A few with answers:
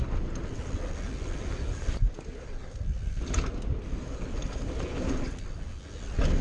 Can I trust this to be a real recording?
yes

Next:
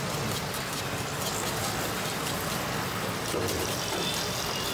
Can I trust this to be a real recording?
yes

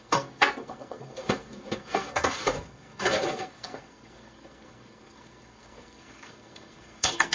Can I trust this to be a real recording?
no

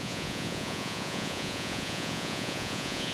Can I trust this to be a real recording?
no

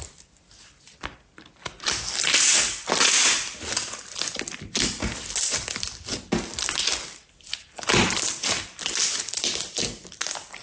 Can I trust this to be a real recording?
yes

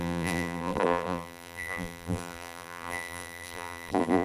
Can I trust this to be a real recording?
no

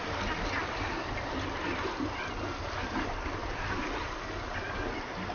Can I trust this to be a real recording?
yes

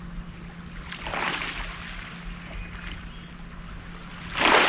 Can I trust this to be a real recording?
yes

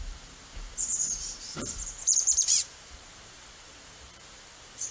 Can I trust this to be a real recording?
no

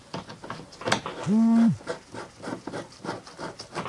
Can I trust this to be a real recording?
yes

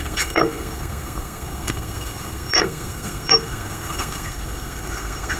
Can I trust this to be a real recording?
no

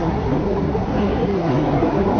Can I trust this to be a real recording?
no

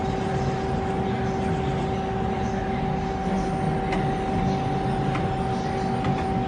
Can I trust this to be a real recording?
yes